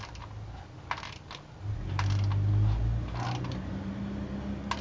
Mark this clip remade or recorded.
recorded